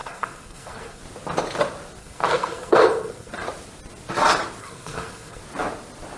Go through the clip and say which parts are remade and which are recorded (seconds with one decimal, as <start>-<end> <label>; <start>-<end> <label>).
0.0-1.0 remade; 1.0-2.0 recorded; 2.0-3.3 remade; 3.3-4.6 recorded; 4.6-5.4 remade; 5.4-6.2 recorded